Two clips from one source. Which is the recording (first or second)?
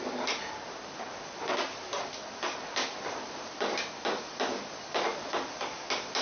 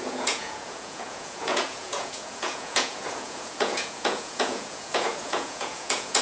first